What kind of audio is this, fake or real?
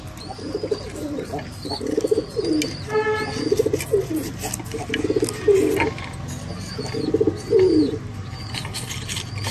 real